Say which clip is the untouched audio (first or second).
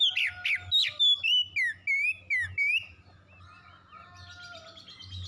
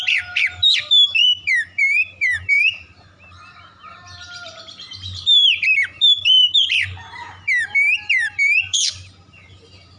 first